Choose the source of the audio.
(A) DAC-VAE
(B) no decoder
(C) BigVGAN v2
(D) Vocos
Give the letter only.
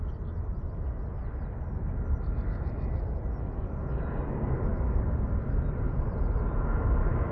B